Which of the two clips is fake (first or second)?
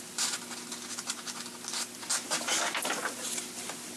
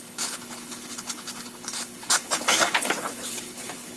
second